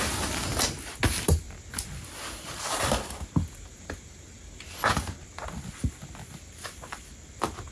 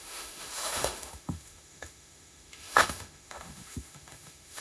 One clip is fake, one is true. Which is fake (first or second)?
second